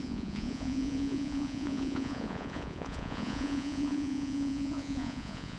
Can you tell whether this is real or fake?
fake